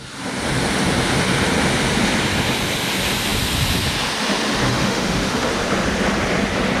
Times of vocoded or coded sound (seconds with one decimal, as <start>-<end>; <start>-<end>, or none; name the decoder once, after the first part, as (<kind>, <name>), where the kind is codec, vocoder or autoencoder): 4.7-5.5 (autoencoder, DAC-VAE)